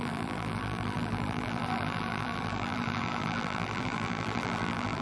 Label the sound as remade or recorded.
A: remade